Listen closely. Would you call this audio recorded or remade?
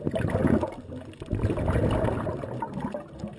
recorded